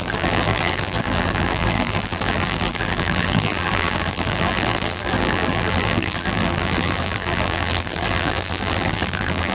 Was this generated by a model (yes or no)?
yes